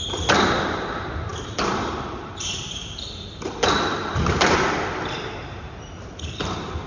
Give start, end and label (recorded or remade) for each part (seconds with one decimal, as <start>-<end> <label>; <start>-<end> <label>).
0.0-6.9 remade